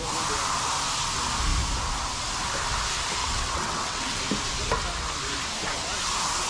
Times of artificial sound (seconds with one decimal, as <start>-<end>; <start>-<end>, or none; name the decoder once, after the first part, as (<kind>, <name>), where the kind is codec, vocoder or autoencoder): 3.2-4.2 (vocoder, WaveNeXt)